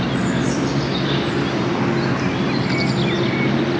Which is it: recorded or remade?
recorded